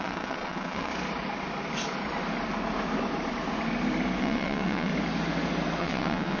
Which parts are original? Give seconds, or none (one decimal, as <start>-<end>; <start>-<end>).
0.9-4.2; 4.9-5.8

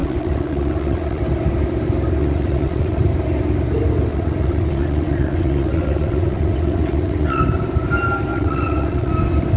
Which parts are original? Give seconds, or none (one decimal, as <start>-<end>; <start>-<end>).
1.2-2.2; 3.0-4.1; 7.4-8.3; 9.1-9.6

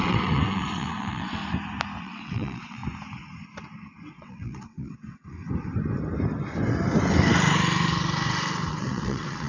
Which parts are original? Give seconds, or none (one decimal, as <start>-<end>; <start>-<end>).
1.4-2.0; 2.8-4.1; 5.4-8.7

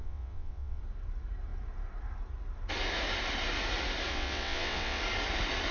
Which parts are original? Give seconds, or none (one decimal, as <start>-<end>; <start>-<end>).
0.8-4.1; 5.0-5.7

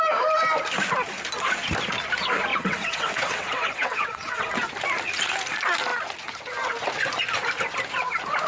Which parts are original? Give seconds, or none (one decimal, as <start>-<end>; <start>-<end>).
0.0-2.5; 4.5-8.5

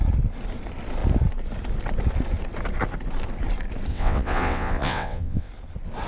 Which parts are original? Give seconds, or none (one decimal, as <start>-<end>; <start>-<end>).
0.0-3.9; 5.5-6.1

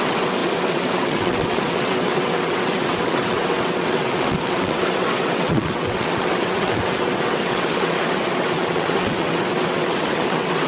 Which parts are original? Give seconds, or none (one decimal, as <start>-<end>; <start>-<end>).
none